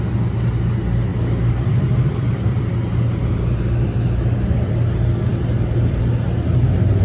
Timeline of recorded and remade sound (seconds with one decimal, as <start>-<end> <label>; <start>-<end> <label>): 0.0-1.1 recorded; 1.1-2.7 remade; 2.7-5.3 recorded; 5.3-6.1 remade; 6.1-7.0 recorded